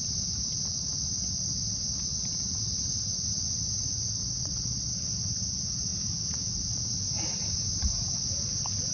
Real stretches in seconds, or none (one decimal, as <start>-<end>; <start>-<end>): 0.0-4.2; 4.9-8.9